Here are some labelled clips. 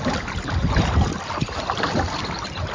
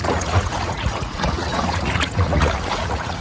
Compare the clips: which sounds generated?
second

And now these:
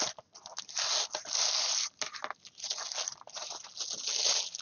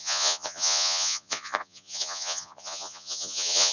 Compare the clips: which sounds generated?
second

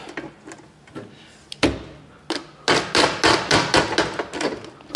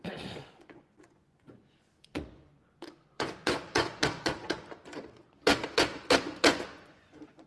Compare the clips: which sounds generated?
second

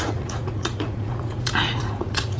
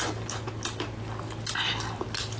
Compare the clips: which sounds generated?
first